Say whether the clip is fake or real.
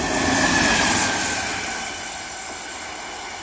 real